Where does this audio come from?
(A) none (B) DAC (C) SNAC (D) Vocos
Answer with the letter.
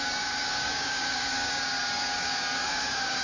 B